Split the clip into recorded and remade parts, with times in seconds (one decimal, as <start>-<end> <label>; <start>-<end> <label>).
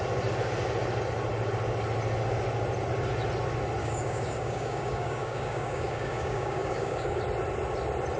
0.0-3.8 recorded; 3.8-7.2 remade; 7.2-8.2 recorded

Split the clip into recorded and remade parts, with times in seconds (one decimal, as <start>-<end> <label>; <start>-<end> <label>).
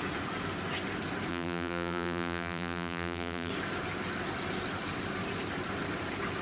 0.0-1.3 recorded; 1.3-3.5 remade; 3.5-6.4 recorded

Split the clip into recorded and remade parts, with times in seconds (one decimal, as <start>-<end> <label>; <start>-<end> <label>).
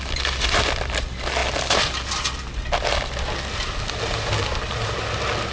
0.0-5.5 recorded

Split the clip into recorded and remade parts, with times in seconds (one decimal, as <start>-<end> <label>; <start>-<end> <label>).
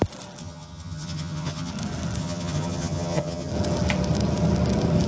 0.0-0.4 recorded; 0.4-1.7 remade; 1.7-2.2 recorded; 2.2-3.5 remade; 3.5-5.1 recorded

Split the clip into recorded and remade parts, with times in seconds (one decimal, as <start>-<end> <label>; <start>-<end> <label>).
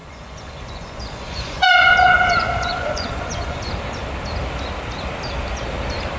0.0-3.7 remade; 3.7-6.2 recorded